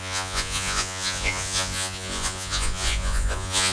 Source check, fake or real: fake